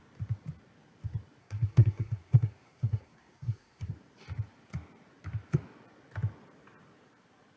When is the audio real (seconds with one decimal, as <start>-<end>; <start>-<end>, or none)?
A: 0.0-1.4; 3.9-7.6